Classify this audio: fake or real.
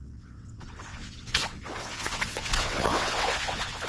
fake